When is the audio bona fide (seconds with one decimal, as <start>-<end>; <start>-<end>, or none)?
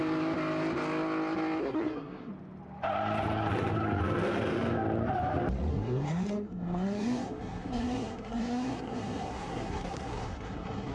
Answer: 0.0-1.6; 2.3-5.7